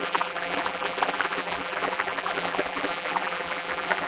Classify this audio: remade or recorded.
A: remade